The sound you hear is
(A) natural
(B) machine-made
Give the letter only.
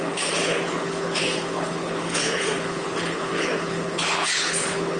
B